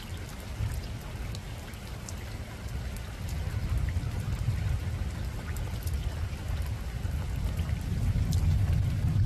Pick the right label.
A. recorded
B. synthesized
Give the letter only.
A